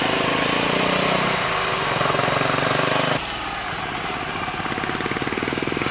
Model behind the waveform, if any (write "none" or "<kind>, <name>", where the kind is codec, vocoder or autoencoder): none